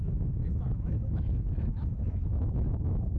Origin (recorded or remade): remade